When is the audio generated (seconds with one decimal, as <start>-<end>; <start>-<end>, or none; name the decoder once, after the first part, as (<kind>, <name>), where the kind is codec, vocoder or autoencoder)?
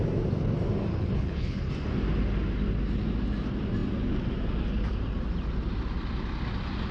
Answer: 0.9-1.7 (codec, HILCodec)